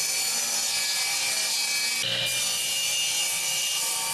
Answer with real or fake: real